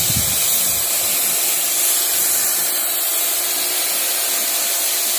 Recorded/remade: recorded